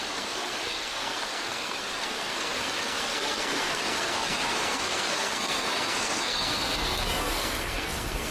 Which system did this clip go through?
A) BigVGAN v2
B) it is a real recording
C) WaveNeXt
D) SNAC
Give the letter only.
D